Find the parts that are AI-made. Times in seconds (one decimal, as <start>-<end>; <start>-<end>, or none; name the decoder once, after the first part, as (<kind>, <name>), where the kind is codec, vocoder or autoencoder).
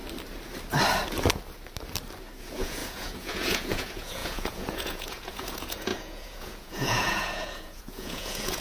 2.4-8.6 (vocoder, Vocos)